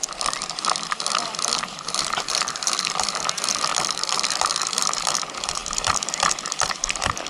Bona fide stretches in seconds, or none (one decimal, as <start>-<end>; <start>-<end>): 2.3-3.7; 4.4-5.6